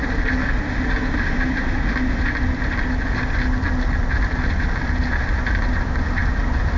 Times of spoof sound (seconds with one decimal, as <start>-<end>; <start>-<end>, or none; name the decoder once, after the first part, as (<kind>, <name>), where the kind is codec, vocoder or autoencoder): none